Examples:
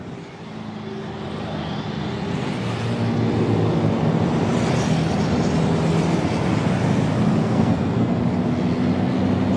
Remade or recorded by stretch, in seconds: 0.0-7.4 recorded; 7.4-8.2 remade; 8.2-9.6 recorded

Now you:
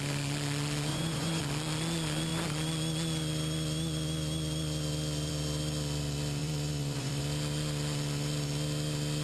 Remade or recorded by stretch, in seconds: 0.0-0.9 recorded; 0.9-1.4 remade; 1.4-6.4 recorded; 6.4-7.2 remade; 7.2-9.2 recorded

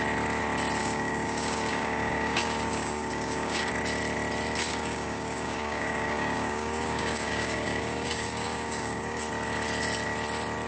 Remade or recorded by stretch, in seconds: 0.0-0.8 recorded; 0.8-3.7 remade; 3.7-4.7 recorded; 4.7-9.2 remade; 9.2-10.7 recorded

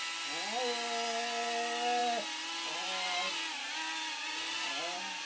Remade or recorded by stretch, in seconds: 0.0-5.2 recorded

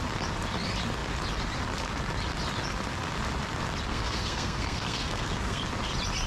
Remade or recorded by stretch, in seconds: 0.0-3.9 recorded; 3.9-5.6 remade; 5.6-6.3 recorded

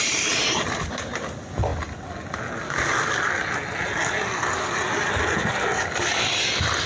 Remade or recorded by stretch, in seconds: 0.0-6.9 recorded